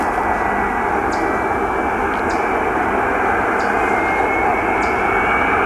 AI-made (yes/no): no